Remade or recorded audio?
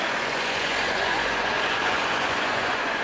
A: remade